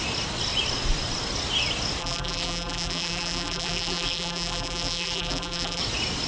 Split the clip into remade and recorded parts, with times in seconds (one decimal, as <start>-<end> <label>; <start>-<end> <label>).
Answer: 0.0-2.0 recorded; 2.0-5.8 remade; 5.8-6.3 recorded